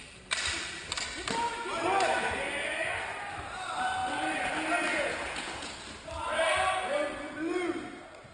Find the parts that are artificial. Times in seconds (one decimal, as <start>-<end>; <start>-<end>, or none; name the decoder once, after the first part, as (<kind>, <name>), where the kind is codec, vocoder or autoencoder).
4.9-5.7 (vocoder, Vocos)